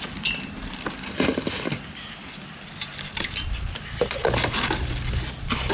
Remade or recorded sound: recorded